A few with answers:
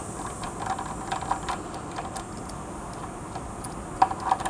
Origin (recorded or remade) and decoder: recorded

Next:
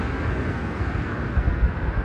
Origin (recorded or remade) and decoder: remade, codec, SNAC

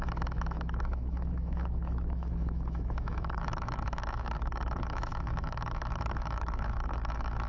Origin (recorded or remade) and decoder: remade, autoencoder, DAC-VAE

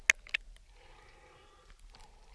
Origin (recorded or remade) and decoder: recorded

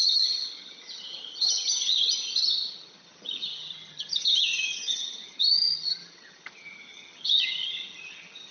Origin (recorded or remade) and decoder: remade, vocoder, HiFi-GAN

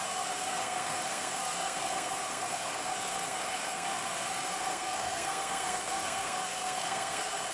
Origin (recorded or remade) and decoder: remade, codec, SNAC